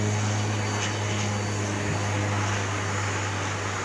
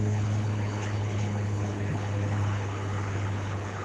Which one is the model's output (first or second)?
second